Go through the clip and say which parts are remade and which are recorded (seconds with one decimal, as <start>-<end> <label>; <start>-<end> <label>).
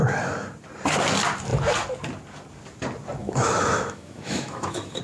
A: 0.0-3.2 recorded; 3.2-5.0 remade